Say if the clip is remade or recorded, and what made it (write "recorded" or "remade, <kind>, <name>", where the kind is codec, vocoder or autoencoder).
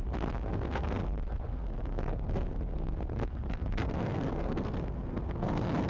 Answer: remade, codec, SNAC